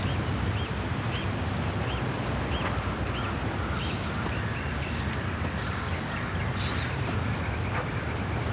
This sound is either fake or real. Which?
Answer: real